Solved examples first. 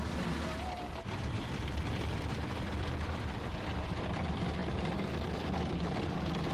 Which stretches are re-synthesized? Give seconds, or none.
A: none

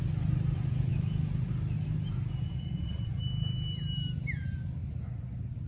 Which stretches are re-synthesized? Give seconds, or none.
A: 2.5-3.2 (vocoder, Vocos)